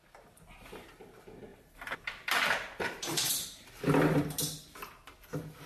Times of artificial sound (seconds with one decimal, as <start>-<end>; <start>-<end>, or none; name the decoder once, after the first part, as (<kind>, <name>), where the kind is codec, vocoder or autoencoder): 1.5-3.7 (vocoder, BigVGAN v2)